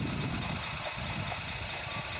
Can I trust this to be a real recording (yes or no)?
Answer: yes